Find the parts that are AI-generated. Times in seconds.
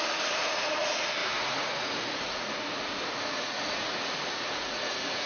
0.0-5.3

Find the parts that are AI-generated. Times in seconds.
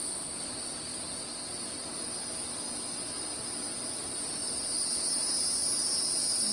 none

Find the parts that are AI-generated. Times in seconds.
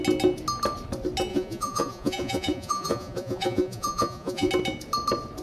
1.3-4.5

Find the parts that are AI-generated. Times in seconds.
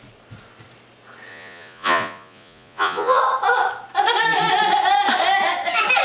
1.3-3.2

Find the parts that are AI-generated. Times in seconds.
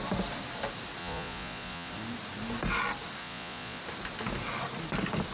1.0-1.9; 3.2-3.8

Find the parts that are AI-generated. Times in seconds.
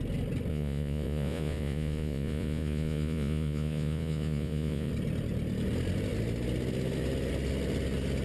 0.5-4.9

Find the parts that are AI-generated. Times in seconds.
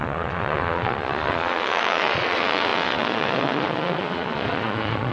0.0-5.1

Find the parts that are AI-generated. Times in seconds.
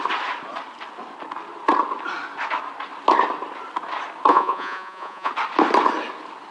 4.3-5.3